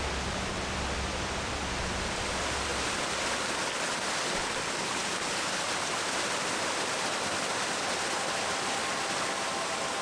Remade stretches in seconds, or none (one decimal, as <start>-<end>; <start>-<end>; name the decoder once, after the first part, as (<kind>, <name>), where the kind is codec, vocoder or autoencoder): none